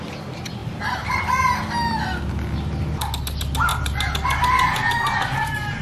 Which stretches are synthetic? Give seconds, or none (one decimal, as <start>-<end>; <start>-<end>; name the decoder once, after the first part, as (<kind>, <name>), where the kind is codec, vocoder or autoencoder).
0.6-1.3 (vocoder, BigVGAN v2)